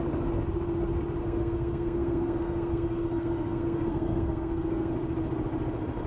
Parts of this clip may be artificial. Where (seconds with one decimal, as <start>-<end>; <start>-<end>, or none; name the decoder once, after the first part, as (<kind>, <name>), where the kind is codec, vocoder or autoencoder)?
1.2-4.9 (codec, SNAC)